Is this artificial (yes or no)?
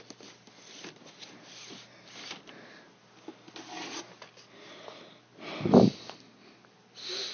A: no